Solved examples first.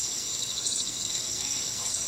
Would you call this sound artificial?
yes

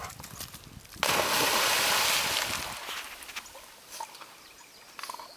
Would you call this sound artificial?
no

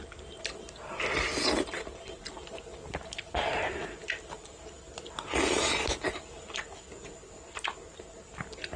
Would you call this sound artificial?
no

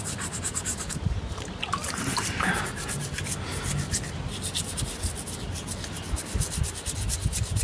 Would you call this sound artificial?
no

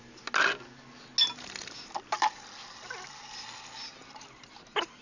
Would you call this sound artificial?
no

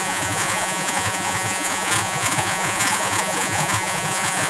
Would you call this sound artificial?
yes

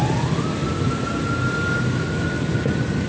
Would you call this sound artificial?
no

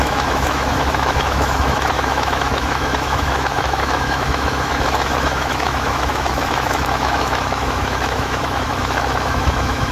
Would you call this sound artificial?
yes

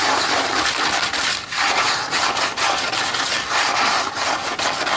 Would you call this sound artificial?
yes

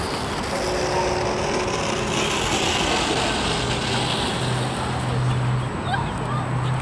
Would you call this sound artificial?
no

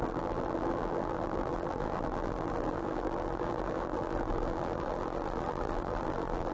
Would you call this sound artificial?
yes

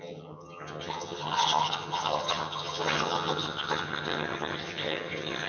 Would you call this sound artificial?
yes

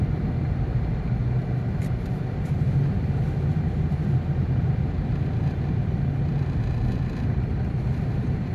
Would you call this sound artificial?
no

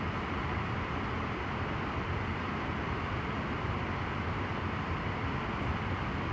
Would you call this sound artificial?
no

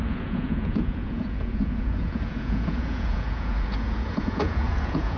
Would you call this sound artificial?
yes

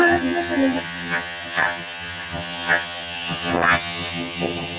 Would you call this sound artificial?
yes